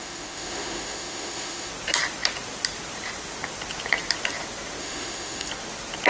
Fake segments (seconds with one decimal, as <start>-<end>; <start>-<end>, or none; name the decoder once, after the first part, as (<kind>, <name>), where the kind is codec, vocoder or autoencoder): 0.0-1.7 (autoencoder, DAC-VAE); 4.8-5.5